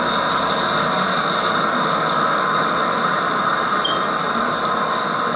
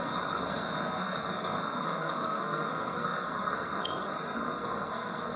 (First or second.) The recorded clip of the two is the first